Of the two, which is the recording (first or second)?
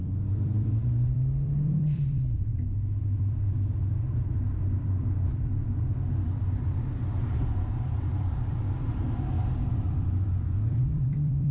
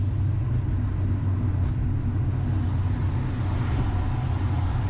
second